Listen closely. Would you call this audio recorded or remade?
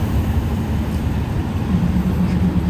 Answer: recorded